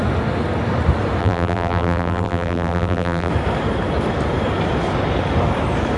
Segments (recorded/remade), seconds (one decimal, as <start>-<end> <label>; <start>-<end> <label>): 0.0-1.2 recorded; 1.2-3.3 remade; 3.3-6.0 recorded

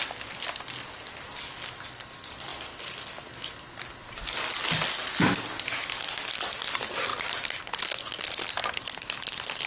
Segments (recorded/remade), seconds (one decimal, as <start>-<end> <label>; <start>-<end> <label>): 0.0-7.1 remade; 7.1-7.6 recorded; 7.6-9.7 remade

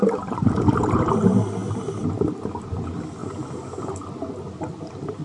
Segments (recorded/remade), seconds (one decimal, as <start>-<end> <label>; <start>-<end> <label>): 0.0-5.2 recorded

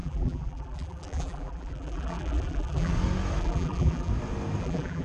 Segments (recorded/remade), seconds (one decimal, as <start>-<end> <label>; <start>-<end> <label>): 0.0-2.9 remade; 2.9-3.4 recorded; 3.4-4.1 remade; 4.1-4.6 recorded; 4.6-5.0 remade

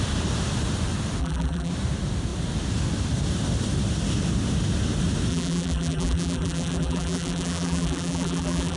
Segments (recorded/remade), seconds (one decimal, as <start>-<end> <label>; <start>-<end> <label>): 0.0-1.2 recorded; 1.2-1.7 remade; 1.7-5.3 recorded; 5.3-8.8 remade

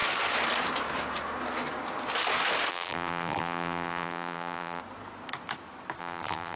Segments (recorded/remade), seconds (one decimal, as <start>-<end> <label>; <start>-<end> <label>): 0.0-2.7 recorded; 2.7-4.8 remade; 4.8-6.0 recorded; 6.0-6.6 remade

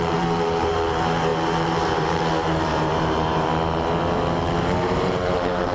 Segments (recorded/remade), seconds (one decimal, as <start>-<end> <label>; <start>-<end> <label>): 0.0-3.5 remade; 3.5-4.6 recorded; 4.6-5.7 remade